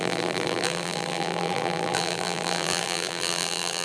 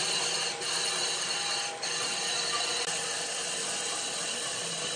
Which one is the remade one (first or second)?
first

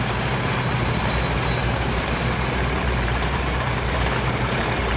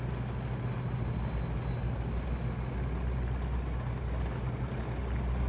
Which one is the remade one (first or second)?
first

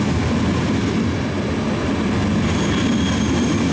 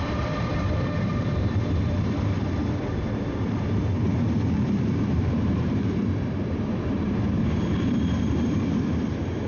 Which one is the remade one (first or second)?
second